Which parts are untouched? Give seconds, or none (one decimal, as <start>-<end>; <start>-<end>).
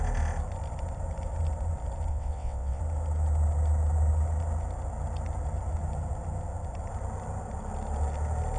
0.0-2.1; 2.8-8.6